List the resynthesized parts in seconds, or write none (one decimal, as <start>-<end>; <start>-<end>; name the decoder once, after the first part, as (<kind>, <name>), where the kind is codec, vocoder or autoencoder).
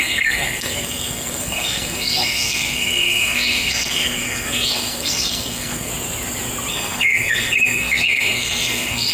0.0-5.9 (codec, SNAC); 6.7-9.1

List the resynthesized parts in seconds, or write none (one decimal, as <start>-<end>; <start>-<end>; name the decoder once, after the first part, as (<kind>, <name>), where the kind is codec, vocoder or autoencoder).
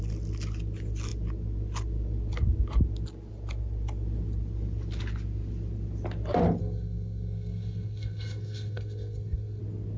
6.6-9.6 (codec, SNAC)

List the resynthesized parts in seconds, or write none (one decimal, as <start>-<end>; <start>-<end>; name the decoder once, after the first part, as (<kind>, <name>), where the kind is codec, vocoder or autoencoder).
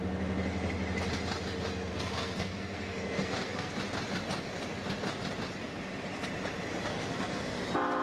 1.9-3.7 (codec, SNAC); 6.9-7.6